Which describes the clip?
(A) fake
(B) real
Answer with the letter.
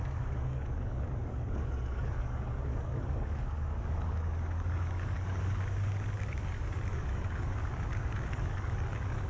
A